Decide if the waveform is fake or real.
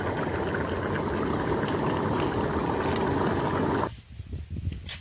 real